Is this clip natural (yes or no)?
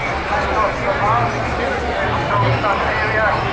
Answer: yes